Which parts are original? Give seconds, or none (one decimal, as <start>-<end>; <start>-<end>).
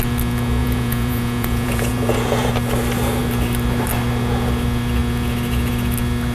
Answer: 0.0-0.6; 2.5-6.3